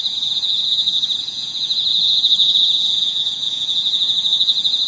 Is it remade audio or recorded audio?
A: remade